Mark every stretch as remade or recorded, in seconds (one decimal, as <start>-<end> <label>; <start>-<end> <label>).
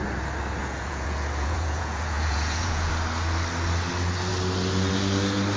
0.0-0.6 recorded; 0.6-2.9 remade; 2.9-5.6 recorded